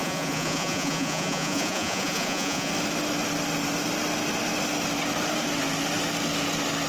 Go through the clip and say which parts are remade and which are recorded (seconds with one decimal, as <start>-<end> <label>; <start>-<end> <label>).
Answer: 0.0-2.7 remade; 2.7-6.9 recorded